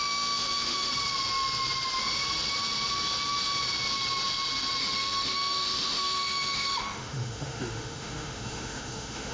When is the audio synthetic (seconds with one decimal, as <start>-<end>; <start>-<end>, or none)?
0.0-0.9; 4.8-9.3